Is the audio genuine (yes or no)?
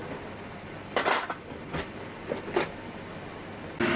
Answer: yes